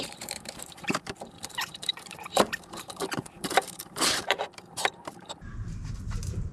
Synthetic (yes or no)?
yes